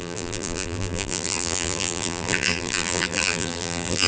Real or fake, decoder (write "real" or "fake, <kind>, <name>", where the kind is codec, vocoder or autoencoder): fake, vocoder, BigVGAN v2